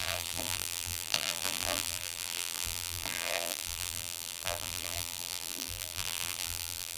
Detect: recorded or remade remade